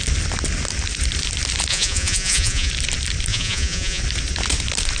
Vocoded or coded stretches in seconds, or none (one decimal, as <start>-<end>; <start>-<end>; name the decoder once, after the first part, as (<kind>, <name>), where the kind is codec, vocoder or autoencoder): 1.7-2.7 (vocoder, Vocos); 3.3-4.0

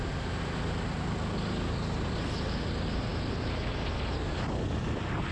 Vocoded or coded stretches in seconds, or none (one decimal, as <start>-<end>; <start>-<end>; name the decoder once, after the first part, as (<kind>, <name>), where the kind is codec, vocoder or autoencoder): none

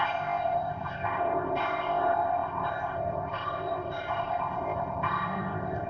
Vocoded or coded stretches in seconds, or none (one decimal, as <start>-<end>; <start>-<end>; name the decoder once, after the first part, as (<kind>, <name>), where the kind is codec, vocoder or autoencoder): 0.0-5.9 (codec, ZipCodec)

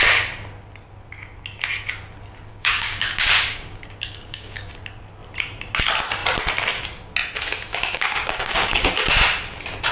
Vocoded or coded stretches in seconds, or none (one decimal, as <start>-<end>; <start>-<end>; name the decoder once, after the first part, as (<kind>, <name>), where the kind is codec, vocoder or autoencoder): 2.5-4.7 (codec, DAC); 7.7-8.9

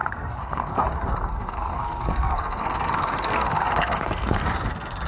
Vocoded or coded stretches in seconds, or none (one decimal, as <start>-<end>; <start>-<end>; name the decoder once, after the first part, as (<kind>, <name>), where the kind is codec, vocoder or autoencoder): 0.0-0.8 (codec, SNAC); 1.3-4.4